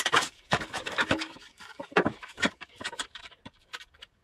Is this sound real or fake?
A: fake